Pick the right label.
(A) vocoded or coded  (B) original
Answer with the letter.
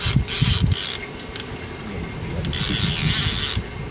B